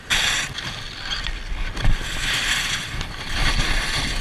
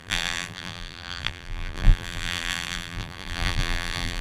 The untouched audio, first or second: first